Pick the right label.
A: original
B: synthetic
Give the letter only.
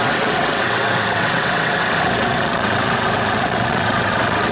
B